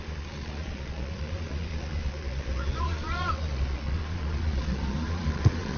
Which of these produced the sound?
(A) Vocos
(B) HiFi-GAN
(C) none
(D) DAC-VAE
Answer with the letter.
A